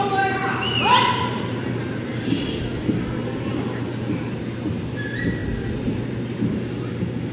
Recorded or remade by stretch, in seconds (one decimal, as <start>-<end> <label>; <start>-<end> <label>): 0.0-7.3 recorded